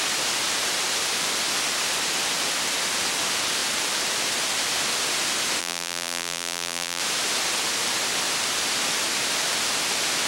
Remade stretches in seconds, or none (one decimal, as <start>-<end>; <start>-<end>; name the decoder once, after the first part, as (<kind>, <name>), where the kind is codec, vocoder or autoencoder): 5.6-7.0 (vocoder, BigVGAN v2)